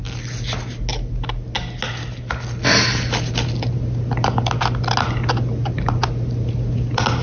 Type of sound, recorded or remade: recorded